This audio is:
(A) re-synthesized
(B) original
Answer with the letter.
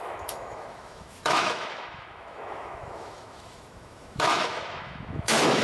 A